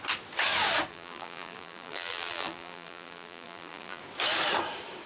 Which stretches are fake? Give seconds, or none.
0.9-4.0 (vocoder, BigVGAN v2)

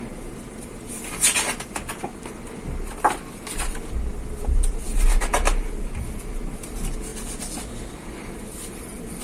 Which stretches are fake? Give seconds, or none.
none

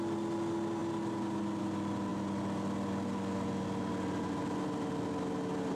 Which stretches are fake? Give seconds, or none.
none

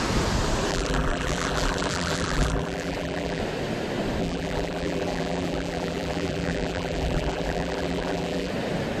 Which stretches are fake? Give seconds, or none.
0.7-3.4 (vocoder, BigVGAN v2); 4.2-8.5

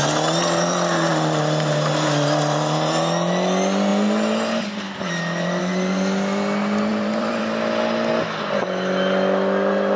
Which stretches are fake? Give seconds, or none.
6.9-7.4 (vocoder, BigVGAN v2)

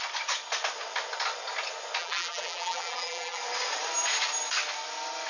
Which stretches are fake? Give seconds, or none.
2.0-3.4 (vocoder, BigVGAN v2)

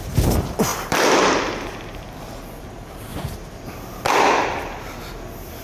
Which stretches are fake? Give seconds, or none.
0.7-2.7 (vocoder, BigVGAN v2); 3.1-5.0